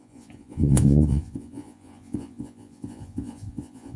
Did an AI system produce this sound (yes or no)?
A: yes